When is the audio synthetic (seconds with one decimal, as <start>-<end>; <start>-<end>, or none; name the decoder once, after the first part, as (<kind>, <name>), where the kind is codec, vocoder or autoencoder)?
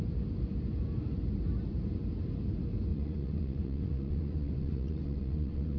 2.9-5.8 (vocoder, Vocos)